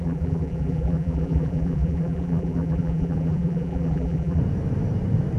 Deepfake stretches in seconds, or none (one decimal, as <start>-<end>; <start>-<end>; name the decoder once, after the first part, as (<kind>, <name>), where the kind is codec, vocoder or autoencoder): 0.0-4.4 (vocoder, BigVGAN v2)